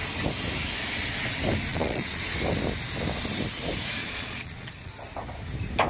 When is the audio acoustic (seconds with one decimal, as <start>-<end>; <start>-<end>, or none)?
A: 0.0-1.7; 2.2-4.0; 4.9-5.9